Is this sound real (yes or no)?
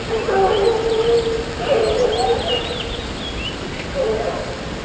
yes